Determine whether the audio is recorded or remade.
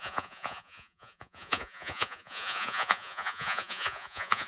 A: remade